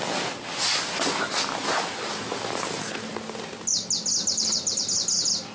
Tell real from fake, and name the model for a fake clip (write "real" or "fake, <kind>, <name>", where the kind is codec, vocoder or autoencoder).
real